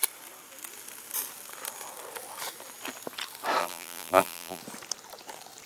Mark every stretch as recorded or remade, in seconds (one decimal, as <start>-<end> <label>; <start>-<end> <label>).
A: 0.0-3.6 recorded; 3.6-4.6 remade; 4.6-5.7 recorded